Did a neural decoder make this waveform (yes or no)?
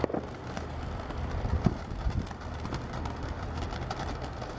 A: no